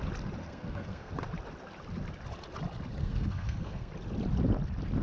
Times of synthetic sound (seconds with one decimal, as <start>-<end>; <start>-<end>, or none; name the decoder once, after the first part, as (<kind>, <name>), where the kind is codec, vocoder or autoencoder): 0.4-1.1 (codec, SNAC); 3.0-3.9